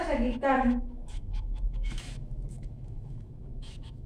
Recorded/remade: remade